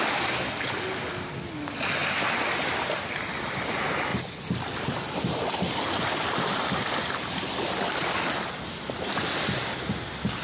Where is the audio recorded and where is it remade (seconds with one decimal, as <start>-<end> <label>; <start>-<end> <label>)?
0.0-4.1 recorded; 4.1-7.9 remade; 7.9-10.4 recorded